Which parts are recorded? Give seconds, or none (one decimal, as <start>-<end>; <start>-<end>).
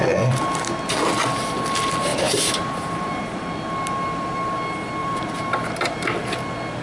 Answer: 0.0-2.1; 3.4-5.0; 5.7-6.8